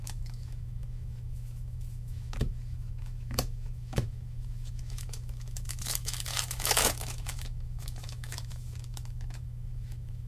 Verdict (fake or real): fake